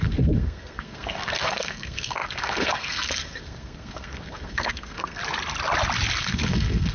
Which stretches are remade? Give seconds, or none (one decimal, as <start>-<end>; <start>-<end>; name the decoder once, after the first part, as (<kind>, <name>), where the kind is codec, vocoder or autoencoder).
0.0-5.2 (codec, SNAC); 6.2-6.9

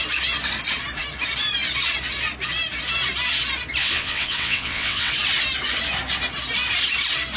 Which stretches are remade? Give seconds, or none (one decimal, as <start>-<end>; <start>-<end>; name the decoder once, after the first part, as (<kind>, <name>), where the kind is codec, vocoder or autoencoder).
3.8-5.1 (vocoder, WaveNeXt)

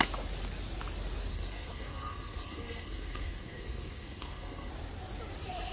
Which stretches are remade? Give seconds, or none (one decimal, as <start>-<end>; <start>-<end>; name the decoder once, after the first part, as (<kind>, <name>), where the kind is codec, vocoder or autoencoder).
1.3-4.7 (codec, SNAC)

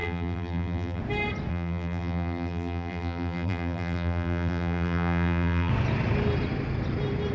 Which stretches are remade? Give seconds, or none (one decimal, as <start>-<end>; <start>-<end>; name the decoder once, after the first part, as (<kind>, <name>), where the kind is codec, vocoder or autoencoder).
0.0-1.0 (vocoder, BigVGAN v2); 1.5-5.7

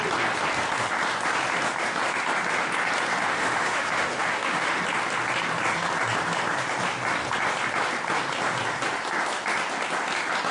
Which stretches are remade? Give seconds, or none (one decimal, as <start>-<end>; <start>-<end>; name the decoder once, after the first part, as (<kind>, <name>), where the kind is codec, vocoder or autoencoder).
3.2-4.8 (autoencoder, DAC-VAE)

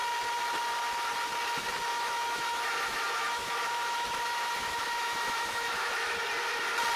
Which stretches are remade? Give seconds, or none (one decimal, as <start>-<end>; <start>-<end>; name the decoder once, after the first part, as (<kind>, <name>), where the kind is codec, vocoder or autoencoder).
1.9-6.1 (autoencoder, DAC-VAE)

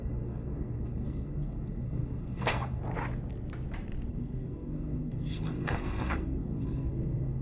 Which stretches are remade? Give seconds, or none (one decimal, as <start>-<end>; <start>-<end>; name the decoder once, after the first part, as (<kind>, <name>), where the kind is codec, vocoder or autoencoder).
0.0-2.8 (codec, SNAC); 4.1-7.4